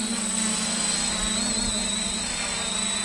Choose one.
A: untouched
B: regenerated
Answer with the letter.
A